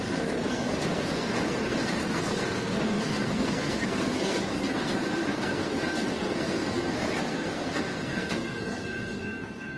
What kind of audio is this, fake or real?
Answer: fake